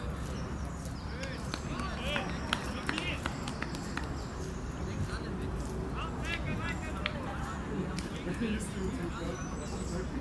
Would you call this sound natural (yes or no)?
yes